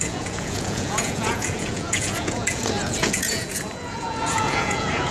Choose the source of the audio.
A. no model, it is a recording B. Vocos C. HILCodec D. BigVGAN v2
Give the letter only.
B